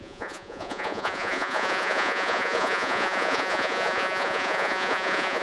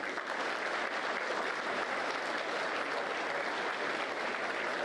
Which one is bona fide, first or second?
second